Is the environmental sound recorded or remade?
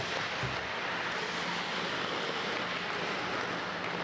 recorded